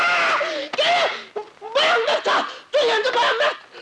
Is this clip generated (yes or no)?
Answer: no